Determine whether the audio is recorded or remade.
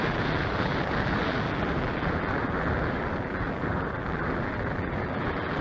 remade